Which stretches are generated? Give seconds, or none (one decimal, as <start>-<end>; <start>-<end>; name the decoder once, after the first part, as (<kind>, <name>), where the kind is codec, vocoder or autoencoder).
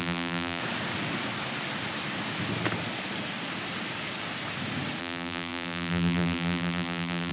0.0-0.6 (vocoder, BigVGAN v2); 5.0-7.3